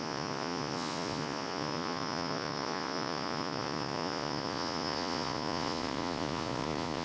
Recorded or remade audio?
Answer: remade